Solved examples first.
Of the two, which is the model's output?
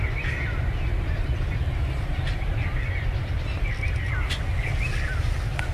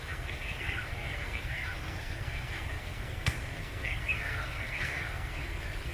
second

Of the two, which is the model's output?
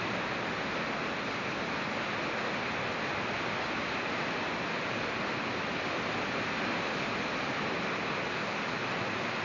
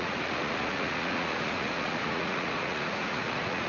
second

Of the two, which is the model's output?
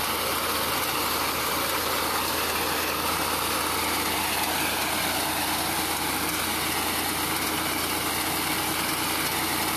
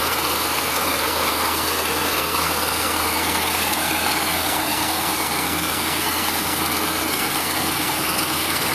second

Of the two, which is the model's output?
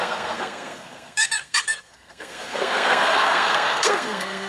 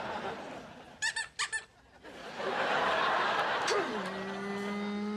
first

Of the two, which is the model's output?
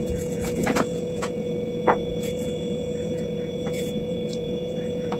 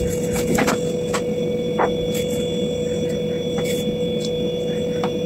first